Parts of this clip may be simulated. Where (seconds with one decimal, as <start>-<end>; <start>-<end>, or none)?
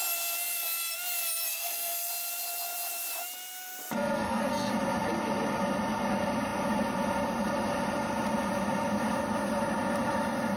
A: 1.5-2.1; 3.8-4.7